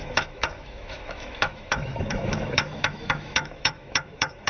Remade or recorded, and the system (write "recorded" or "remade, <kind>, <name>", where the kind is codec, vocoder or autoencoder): remade, autoencoder, DAC-VAE